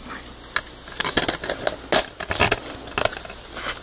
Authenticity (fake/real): real